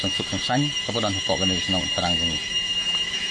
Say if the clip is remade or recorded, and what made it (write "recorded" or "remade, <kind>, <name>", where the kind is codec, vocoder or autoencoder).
remade, autoencoder, DAC-VAE